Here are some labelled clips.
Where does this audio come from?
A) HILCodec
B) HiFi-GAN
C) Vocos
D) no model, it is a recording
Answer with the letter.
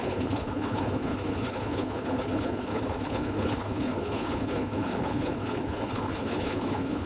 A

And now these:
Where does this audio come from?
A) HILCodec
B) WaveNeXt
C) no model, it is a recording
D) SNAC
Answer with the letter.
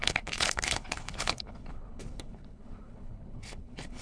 A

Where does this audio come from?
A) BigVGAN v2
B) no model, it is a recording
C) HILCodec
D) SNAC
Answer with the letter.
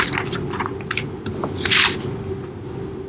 B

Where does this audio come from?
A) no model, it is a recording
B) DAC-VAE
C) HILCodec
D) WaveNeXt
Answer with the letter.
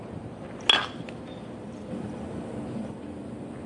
A